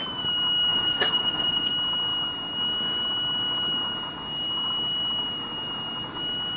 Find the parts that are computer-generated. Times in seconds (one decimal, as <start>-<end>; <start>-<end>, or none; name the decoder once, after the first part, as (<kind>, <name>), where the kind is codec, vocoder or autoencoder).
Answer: 0.7-1.7 (vocoder, Vocos)